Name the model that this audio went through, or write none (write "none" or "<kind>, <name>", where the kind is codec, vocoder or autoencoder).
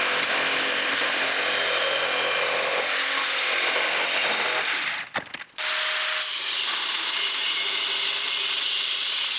none